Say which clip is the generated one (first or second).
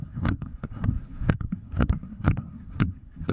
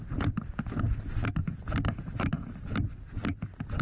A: first